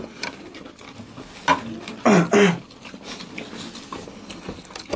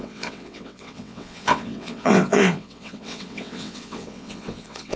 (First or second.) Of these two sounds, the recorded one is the first